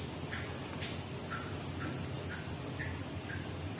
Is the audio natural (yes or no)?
yes